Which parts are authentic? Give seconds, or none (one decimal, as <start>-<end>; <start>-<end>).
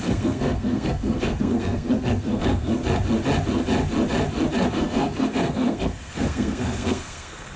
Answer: 2.8-4.7